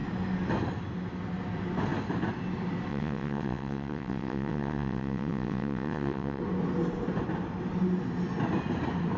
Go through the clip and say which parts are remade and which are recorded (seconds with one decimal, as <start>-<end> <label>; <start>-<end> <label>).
0.0-2.9 recorded; 2.9-6.4 remade; 6.4-9.2 recorded

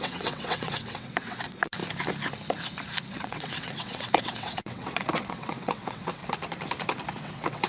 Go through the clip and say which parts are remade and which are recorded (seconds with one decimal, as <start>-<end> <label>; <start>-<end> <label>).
0.0-1.8 remade; 1.8-3.1 recorded; 3.1-6.2 remade; 6.2-7.2 recorded; 7.2-7.7 remade

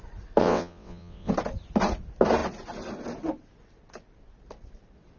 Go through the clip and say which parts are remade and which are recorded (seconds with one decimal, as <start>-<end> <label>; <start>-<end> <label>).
0.0-0.4 recorded; 0.4-1.3 remade; 1.3-5.2 recorded